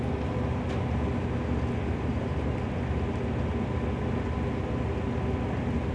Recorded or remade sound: recorded